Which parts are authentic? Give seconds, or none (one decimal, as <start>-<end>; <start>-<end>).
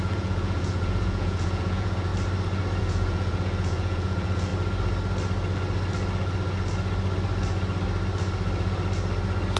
2.1-2.8; 4.5-9.6